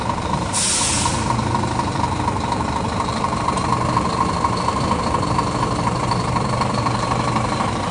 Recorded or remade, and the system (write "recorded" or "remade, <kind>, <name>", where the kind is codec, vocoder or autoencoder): remade, vocoder, BigVGAN v2